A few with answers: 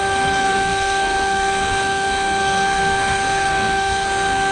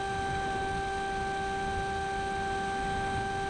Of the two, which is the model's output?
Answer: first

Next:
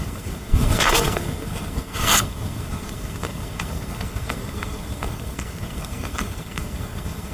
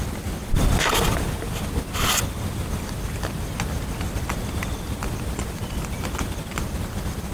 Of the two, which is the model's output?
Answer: first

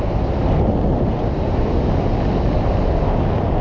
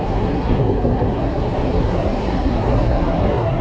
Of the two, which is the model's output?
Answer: second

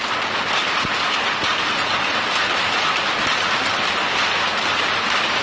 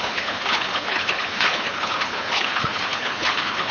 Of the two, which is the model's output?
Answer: second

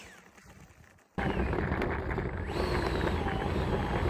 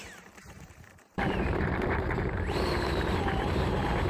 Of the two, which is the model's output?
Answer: second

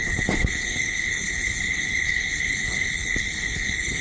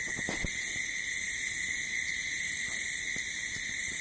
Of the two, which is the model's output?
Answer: first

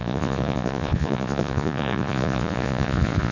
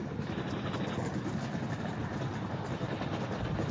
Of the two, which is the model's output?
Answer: first